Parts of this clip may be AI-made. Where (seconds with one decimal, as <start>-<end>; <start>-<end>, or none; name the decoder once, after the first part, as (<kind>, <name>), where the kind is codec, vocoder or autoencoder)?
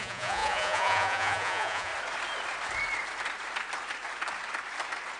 0.0-1.9 (vocoder, Vocos)